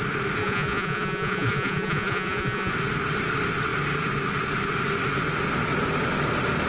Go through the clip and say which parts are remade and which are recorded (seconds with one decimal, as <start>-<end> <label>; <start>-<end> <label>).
0.0-0.4 recorded; 0.4-2.7 remade; 2.7-6.7 recorded